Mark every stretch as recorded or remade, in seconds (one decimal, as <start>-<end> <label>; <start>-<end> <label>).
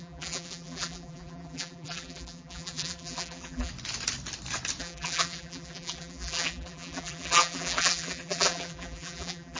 0.0-3.7 remade; 3.7-4.8 recorded; 4.8-9.6 remade